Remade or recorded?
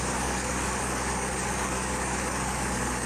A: remade